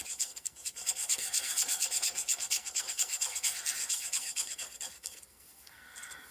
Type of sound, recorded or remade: remade